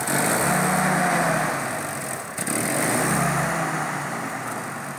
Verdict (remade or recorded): recorded